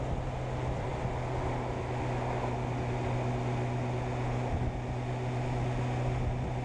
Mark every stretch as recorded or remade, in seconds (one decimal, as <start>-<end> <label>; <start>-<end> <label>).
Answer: 0.0-6.6 recorded